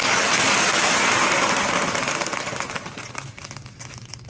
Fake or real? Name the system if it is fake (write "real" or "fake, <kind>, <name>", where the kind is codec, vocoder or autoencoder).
real